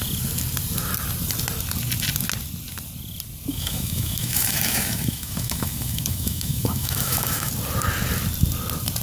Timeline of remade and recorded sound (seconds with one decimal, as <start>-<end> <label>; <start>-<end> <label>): 0.0-3.5 recorded; 3.5-7.5 remade; 7.5-9.0 recorded